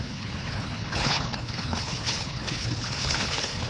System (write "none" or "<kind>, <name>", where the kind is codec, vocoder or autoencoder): codec, HILCodec